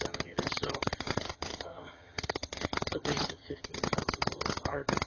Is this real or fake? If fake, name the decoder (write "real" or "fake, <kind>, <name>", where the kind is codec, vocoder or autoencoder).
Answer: fake, vocoder, HiFi-GAN